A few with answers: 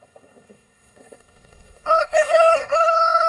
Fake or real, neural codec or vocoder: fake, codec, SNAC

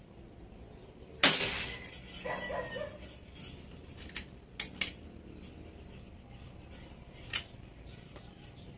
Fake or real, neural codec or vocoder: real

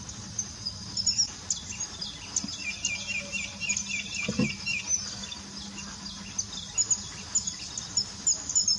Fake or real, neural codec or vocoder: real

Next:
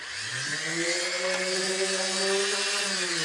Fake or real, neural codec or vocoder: real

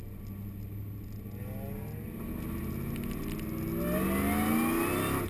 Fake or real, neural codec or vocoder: real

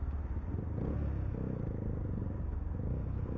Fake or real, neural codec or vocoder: real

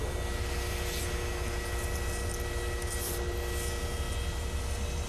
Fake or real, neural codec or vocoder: real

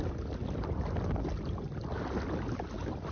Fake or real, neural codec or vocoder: real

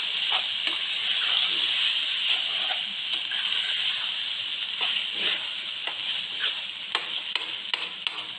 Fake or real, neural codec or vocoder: real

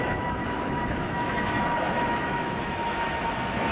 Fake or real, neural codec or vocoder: fake, autoencoder, DAC-VAE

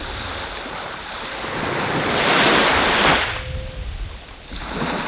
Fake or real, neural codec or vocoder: real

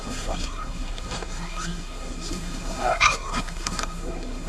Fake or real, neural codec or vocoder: fake, codec, SNAC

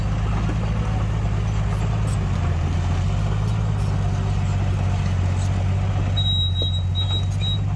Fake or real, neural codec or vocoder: real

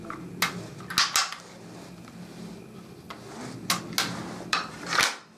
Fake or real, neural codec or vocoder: real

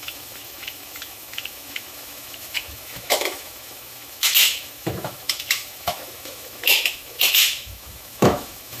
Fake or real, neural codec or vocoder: fake, autoencoder, DAC-VAE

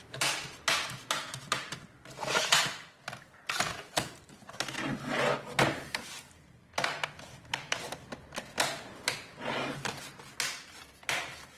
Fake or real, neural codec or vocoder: real